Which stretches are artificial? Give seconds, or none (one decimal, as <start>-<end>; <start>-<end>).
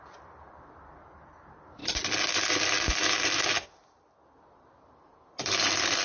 none